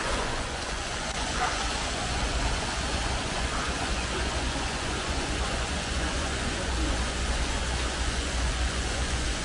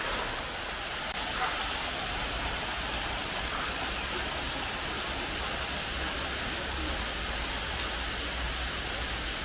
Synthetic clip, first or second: first